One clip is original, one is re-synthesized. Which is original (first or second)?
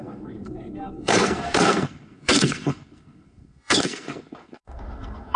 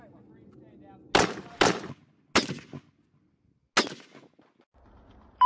second